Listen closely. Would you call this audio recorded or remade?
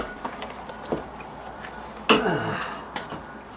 recorded